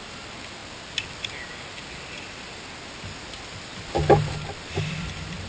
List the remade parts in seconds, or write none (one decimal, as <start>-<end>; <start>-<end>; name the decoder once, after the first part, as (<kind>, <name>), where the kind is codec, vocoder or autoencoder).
none